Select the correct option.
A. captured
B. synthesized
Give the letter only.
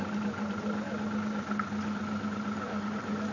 A